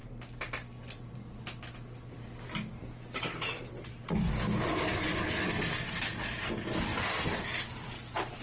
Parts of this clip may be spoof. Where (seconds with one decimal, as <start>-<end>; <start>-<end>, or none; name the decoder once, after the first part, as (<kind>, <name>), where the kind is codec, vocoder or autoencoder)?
none